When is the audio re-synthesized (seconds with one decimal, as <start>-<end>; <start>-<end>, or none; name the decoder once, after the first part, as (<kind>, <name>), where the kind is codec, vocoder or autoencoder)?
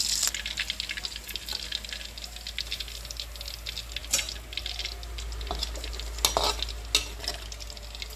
none